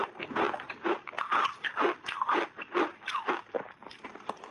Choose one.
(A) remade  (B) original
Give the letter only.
B